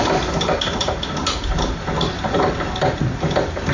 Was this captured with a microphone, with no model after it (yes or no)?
yes